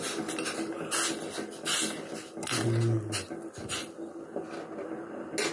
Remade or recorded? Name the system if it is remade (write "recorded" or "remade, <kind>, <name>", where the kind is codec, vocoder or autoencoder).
recorded